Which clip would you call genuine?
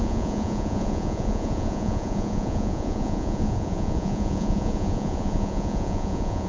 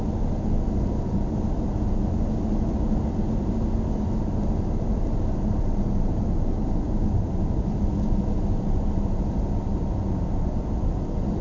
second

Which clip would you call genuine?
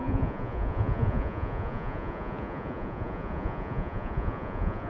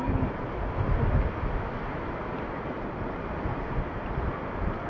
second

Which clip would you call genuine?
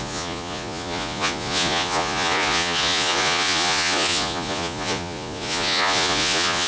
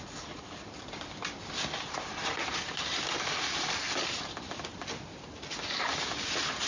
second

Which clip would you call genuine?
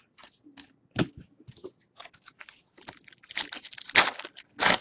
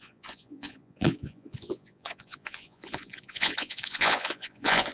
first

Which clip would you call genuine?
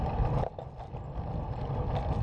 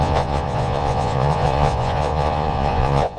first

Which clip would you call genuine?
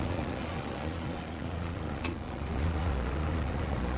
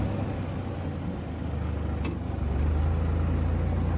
second